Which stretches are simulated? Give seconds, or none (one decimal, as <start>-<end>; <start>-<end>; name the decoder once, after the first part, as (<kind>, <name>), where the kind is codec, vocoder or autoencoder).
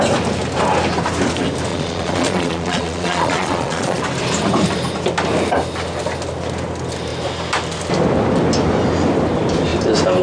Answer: 1.7-4.0 (vocoder, Vocos)